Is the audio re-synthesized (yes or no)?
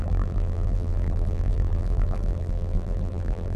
yes